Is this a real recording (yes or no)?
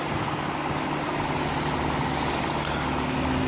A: yes